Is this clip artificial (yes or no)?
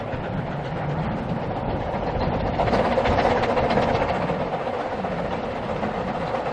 no